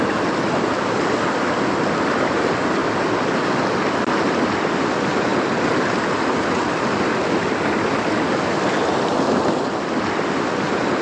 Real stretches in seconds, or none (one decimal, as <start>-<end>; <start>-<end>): 0.0-11.0